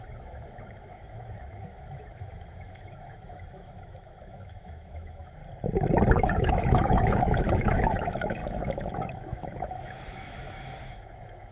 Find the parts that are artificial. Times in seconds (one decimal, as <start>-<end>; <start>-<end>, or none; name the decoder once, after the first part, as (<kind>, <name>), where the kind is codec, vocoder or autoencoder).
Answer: 0.0-5.4 (autoencoder, DAC-VAE); 6.1-11.5